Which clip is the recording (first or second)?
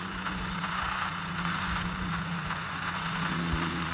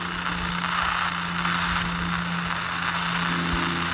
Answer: second